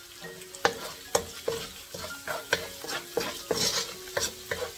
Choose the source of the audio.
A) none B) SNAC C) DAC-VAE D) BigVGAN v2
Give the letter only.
A